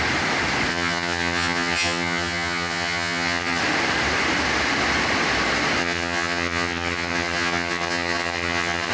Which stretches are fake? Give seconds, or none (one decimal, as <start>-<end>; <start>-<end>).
0.7-3.6; 5.8-8.9